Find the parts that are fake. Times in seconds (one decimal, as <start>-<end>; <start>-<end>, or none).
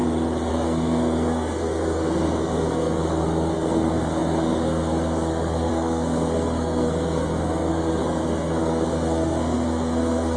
0.5-10.4